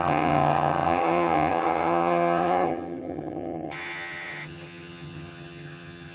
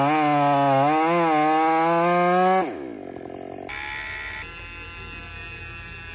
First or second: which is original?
second